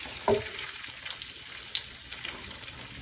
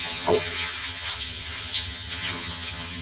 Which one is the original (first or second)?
first